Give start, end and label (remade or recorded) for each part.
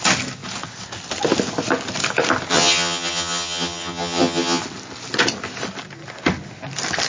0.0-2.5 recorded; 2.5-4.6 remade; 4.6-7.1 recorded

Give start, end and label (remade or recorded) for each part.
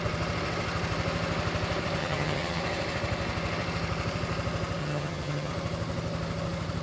0.0-2.0 recorded; 2.0-2.6 remade; 2.6-4.8 recorded; 4.8-5.5 remade; 5.5-6.8 recorded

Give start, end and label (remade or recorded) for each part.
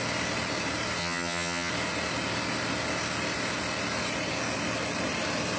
0.0-1.0 recorded; 1.0-1.7 remade; 1.7-5.6 recorded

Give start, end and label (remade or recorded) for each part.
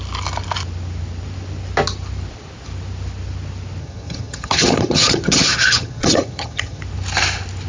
0.0-3.8 recorded; 3.8-6.8 remade; 6.8-7.7 recorded